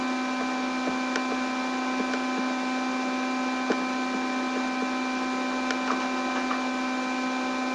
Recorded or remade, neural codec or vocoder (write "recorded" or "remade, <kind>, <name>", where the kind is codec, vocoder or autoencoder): recorded